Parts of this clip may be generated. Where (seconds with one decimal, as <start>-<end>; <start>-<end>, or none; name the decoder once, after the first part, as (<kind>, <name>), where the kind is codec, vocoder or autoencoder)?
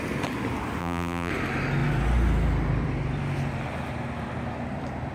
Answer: 0.8-1.3 (vocoder, BigVGAN v2)